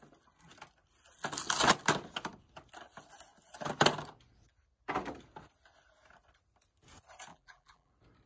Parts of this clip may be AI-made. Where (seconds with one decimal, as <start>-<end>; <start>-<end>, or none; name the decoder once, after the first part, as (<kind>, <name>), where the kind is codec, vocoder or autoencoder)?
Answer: 7.3-7.9 (vocoder, BigVGAN v2)